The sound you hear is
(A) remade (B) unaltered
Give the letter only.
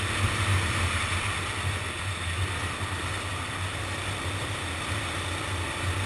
B